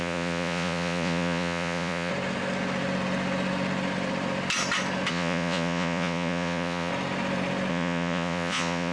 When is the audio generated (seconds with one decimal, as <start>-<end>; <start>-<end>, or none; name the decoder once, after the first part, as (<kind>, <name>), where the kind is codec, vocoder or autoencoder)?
0.0-2.1 (vocoder, Vocos); 5.1-6.9; 7.7-8.9